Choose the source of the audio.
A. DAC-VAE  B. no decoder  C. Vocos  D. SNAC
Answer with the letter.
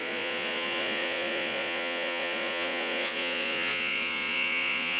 C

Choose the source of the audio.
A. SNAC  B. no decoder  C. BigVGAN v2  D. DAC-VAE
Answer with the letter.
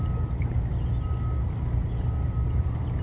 B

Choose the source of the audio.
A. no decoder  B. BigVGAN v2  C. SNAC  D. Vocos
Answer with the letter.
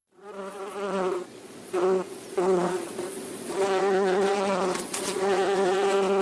D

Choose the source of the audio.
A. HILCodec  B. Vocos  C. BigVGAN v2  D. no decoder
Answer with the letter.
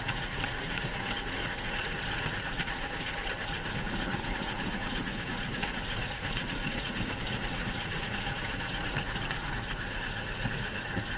B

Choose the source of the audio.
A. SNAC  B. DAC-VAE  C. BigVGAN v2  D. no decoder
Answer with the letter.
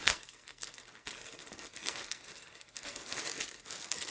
A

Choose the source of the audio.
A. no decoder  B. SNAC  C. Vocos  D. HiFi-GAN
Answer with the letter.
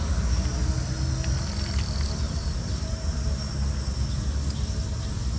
A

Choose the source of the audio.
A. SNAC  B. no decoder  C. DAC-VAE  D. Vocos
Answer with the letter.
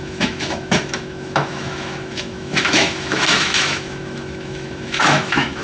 C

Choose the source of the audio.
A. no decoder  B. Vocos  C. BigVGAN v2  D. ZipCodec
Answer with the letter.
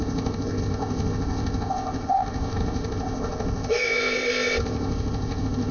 D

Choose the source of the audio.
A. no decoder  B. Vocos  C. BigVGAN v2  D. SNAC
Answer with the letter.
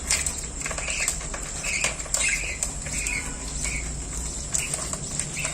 A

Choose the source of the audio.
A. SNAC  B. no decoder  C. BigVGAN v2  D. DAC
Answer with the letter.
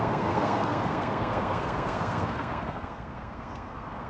A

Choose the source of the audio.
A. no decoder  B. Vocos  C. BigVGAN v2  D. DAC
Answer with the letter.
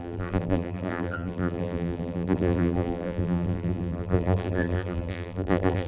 C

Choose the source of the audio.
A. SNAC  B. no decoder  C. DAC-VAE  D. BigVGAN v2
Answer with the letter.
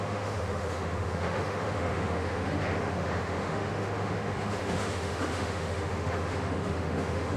C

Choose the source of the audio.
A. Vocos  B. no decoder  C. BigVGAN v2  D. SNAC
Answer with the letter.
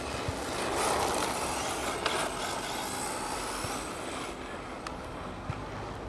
B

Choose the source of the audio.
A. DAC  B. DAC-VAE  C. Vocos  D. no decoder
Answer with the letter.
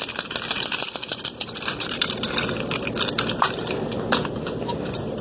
D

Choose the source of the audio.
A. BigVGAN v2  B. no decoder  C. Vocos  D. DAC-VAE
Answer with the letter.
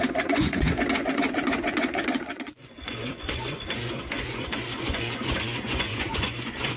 C